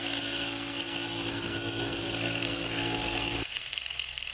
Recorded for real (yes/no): no